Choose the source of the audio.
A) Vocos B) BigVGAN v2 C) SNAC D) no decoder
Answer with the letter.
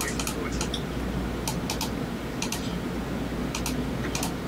D